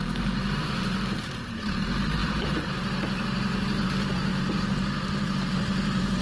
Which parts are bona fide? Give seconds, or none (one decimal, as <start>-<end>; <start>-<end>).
none